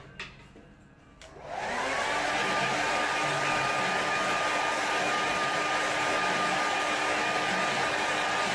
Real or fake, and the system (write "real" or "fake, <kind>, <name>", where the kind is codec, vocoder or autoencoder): real